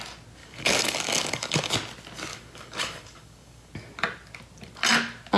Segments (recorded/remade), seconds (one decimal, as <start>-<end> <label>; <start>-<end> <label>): 0.0-0.4 recorded; 0.4-1.7 remade; 1.7-2.3 recorded; 2.3-3.7 remade; 3.7-5.4 recorded